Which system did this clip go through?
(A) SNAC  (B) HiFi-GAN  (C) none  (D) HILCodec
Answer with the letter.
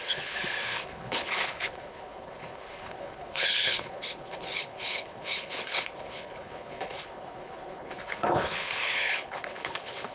D